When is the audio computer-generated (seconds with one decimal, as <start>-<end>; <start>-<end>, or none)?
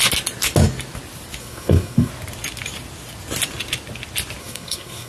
1.4-2.1; 4.4-5.1